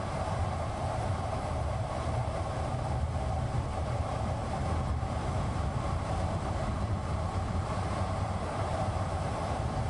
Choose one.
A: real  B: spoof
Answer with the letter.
B